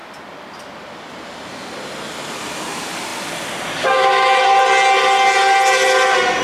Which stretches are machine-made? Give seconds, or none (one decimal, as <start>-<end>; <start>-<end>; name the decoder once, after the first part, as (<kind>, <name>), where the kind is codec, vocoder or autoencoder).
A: none